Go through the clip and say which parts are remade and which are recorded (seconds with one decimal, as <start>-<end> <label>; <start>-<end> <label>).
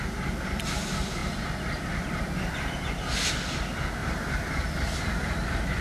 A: 0.0-4.0 recorded; 4.0-5.8 remade